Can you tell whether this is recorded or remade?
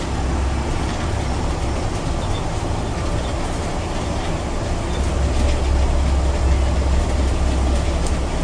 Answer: recorded